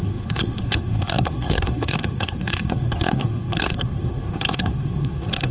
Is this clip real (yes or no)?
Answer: no